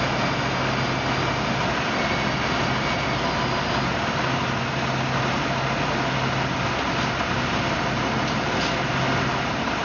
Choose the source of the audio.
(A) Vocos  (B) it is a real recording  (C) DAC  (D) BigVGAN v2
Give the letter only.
B